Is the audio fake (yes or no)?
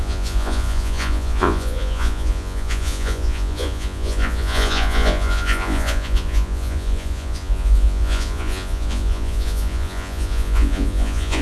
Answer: yes